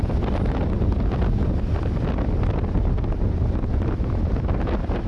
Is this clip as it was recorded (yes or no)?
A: yes